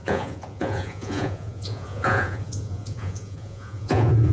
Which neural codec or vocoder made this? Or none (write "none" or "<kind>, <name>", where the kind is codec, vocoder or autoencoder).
vocoder, Vocos